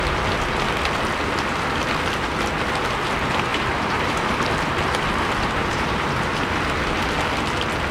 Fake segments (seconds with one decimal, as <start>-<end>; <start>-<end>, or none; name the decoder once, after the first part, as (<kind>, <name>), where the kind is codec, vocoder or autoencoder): 3.5-4.5 (vocoder, BigVGAN v2); 5.6-6.3

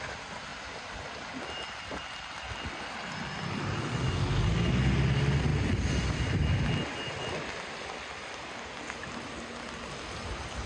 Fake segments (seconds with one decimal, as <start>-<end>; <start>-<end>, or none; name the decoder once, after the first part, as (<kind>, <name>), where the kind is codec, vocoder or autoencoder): none

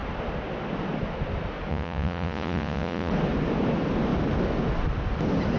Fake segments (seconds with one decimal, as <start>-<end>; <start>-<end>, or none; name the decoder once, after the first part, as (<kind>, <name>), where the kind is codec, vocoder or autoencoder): 1.7-3.1 (vocoder, Vocos)

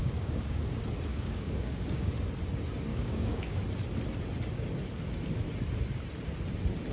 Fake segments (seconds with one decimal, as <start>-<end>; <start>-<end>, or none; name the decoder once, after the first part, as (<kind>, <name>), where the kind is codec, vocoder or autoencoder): 0.0-0.6 (codec, DAC); 1.1-2.1; 2.9-3.6

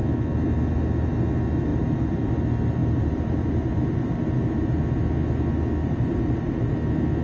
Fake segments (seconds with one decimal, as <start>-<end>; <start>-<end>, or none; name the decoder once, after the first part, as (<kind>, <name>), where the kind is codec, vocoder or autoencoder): 1.7-2.3 (vocoder, BigVGAN v2); 2.8-4.8; 5.8-6.7

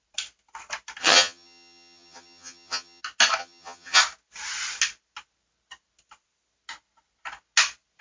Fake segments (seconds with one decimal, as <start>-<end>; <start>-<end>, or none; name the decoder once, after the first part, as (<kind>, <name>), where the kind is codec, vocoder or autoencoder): 1.0-3.0 (vocoder, HiFi-GAN); 3.4-4.0

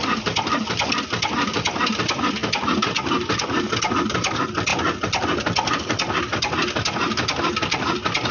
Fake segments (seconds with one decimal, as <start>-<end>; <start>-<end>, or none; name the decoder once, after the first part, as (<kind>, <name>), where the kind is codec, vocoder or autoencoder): 0.0-2.4 (vocoder, BigVGAN v2); 3.9-4.7

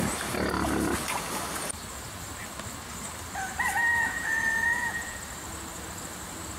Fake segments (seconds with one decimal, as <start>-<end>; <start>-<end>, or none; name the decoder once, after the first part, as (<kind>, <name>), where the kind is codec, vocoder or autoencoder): 3.8-5.2 (vocoder, Vocos)